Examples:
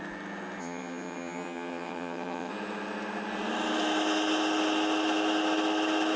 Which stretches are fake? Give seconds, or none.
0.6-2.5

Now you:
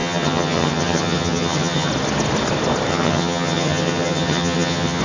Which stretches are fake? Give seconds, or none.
0.0-1.9; 2.9-5.0